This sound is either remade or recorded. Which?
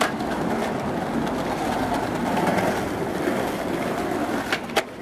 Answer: recorded